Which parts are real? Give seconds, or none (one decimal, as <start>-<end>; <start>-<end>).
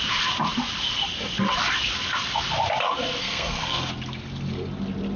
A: 0.0-3.2; 3.9-5.2